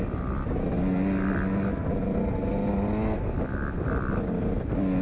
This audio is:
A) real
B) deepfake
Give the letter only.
A